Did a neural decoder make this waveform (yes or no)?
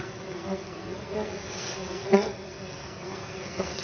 yes